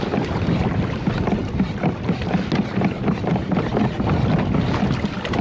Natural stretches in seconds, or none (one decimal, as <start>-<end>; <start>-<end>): 0.0-5.4